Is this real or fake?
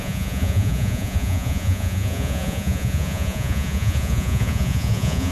fake